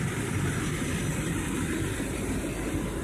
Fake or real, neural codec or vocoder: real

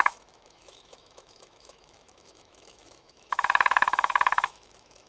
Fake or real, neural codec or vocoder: fake, autoencoder, DAC-VAE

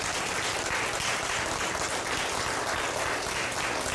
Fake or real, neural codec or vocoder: real